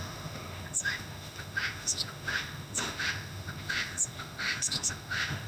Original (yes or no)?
no